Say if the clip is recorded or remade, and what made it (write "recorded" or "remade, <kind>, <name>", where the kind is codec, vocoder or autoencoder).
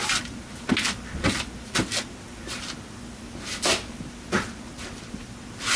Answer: recorded